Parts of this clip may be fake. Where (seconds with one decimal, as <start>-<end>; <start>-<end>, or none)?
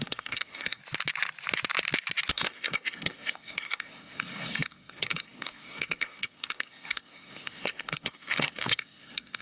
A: 0.0-0.8; 2.3-9.4